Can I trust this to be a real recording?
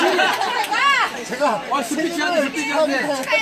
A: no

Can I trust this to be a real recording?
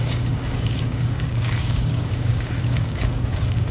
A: no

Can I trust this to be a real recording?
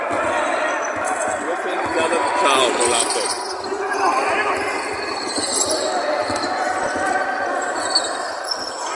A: yes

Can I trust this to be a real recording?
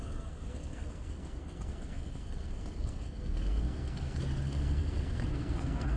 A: no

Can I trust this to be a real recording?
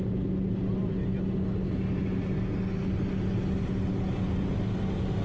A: yes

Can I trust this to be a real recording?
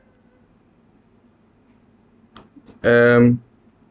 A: yes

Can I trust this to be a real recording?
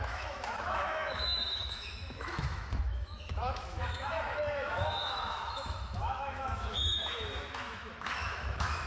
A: no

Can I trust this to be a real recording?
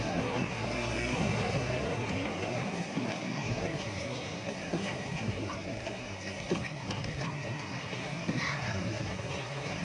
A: no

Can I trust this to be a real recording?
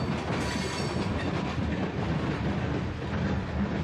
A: yes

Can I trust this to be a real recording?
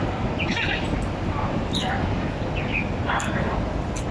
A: yes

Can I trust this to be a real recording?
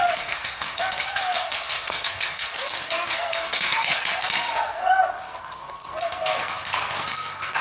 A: no